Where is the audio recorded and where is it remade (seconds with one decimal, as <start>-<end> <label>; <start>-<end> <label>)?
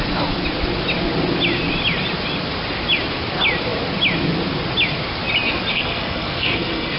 0.0-5.7 recorded; 5.7-7.0 remade